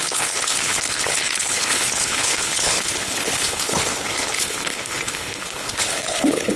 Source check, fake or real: fake